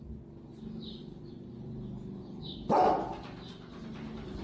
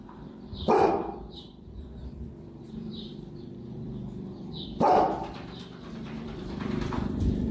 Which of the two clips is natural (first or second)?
first